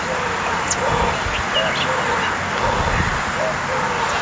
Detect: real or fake real